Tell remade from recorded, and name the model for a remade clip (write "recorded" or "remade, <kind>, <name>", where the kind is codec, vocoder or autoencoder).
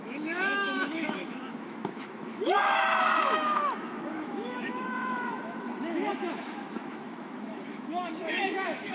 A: remade, autoencoder, DAC-VAE